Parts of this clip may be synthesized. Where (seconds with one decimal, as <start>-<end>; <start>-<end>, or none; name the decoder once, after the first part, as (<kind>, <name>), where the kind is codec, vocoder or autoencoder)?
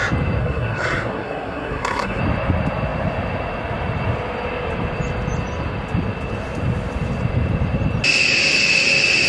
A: 0.4-2.2 (codec, SNAC)